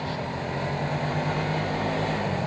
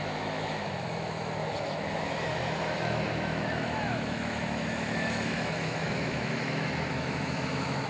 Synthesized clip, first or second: second